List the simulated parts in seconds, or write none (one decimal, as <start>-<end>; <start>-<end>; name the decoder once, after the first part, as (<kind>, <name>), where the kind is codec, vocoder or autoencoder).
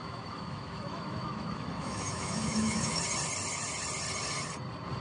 0.0-3.0 (autoencoder, DAC-VAE)